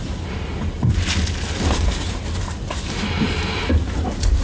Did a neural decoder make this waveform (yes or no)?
no